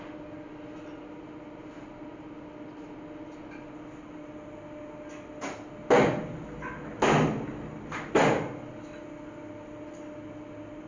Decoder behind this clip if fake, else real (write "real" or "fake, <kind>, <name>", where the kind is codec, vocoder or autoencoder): real